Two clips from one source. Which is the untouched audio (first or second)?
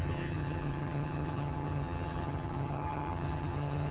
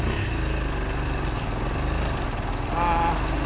second